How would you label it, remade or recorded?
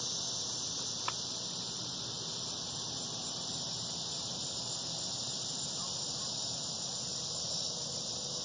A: recorded